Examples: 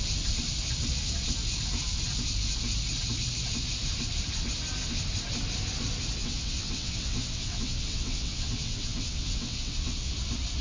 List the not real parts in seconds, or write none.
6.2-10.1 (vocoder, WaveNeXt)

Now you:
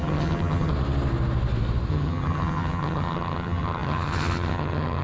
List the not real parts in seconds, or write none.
0.0-0.7 (vocoder, HiFi-GAN); 1.9-5.0

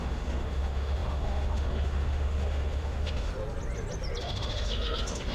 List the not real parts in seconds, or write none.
0.0-3.3 (autoencoder, DAC-VAE); 4.2-5.3

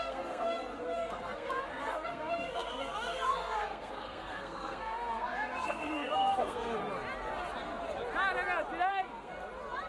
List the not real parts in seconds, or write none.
0.0-6.8 (codec, SNAC); 8.9-9.3

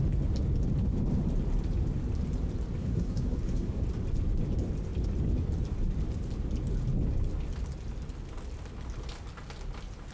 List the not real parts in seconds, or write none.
2.8-3.8 (codec, SNAC)

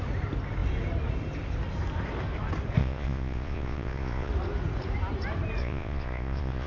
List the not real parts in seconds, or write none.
2.8-4.3 (vocoder, Vocos); 5.6-6.7

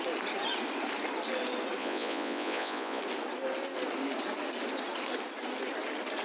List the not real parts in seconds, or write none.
1.8-3.0 (vocoder, Vocos)

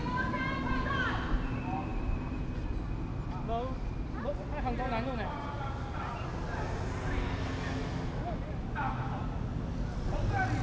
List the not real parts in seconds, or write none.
none